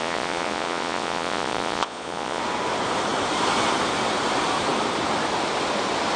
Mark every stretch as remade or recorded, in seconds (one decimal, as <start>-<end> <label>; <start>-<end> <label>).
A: 0.0-2.4 remade; 2.4-6.2 recorded